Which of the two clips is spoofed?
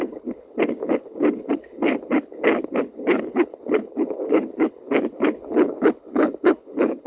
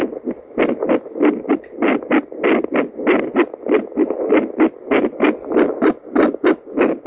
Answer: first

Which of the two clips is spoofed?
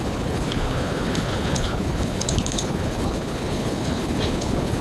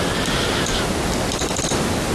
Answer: first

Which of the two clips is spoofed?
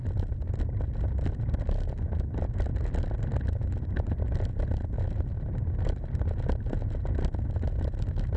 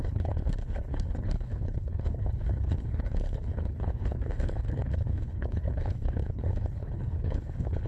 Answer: second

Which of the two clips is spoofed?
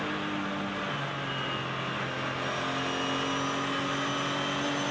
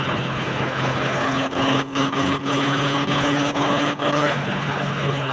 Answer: second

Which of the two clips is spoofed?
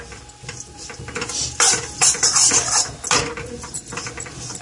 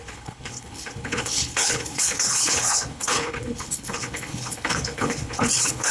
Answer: second